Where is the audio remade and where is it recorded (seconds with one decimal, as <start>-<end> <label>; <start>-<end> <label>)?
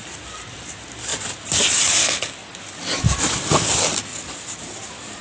0.0-5.2 recorded